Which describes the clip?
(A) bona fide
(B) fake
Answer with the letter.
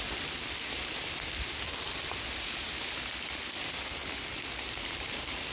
B